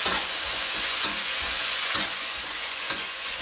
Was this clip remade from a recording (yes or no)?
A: yes